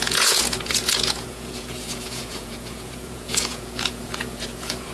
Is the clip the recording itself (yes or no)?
no